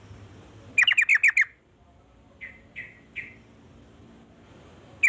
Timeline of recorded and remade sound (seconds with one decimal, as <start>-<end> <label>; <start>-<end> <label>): 0.0-5.1 recorded